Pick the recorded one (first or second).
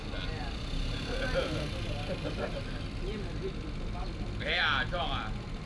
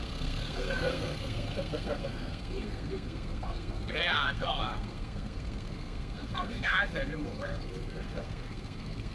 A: first